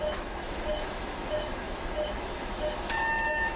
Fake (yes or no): yes